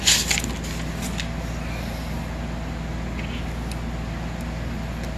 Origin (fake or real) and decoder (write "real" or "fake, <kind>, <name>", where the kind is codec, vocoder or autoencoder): real